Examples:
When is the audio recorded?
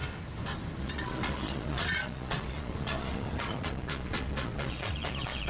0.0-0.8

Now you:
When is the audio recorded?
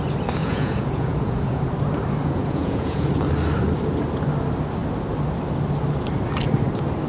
0.0-0.4; 1.6-2.2; 3.1-7.1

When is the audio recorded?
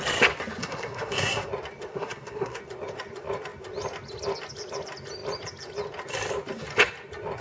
0.0-0.6; 1.5-1.9; 2.6-7.4